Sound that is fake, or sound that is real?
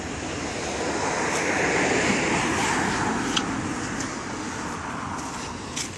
real